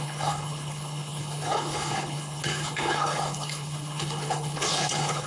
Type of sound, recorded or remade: remade